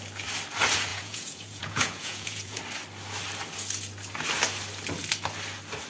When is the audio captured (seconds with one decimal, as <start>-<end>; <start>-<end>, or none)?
0.0-0.9; 2.6-5.9